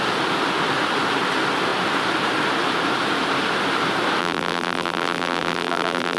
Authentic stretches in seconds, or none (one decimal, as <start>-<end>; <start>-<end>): 0.0-4.2